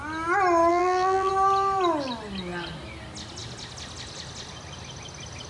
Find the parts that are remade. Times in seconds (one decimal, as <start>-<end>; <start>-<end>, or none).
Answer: 0.7-1.3